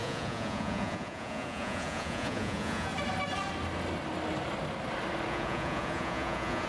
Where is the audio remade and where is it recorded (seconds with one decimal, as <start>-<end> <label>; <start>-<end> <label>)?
0.0-2.9 remade; 2.9-5.3 recorded; 5.3-6.7 remade